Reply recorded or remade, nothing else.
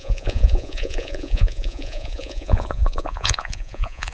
remade